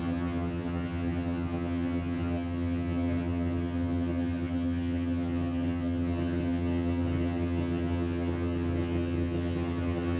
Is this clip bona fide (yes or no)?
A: no